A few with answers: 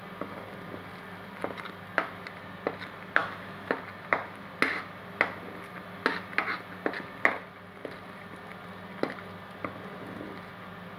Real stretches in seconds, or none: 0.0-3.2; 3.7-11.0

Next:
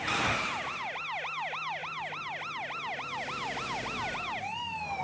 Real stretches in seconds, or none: 0.0-5.0

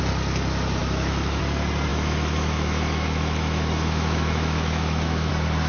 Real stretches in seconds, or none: 0.0-0.8; 1.4-1.9; 5.3-5.7

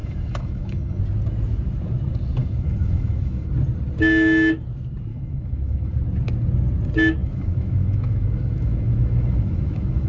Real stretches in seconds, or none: 1.0-2.4; 3.5-5.1; 5.9-7.2

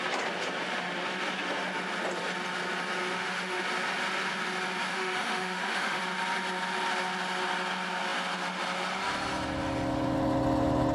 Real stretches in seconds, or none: 0.0-3.1; 3.6-4.9; 6.0-10.9

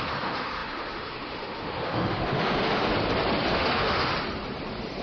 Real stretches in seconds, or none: 2.9-3.5; 4.1-5.0

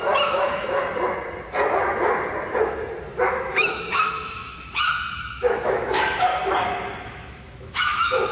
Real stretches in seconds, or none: 0.8-3.3; 6.3-7.0

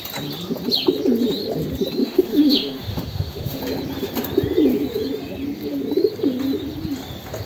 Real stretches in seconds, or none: 0.0-2.0; 3.6-7.5